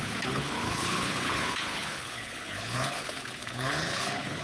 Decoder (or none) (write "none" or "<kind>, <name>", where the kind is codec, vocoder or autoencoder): codec, HILCodec